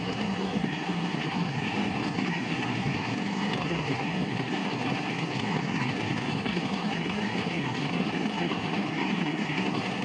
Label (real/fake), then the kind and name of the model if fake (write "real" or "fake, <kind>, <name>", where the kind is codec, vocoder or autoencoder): fake, codec, SNAC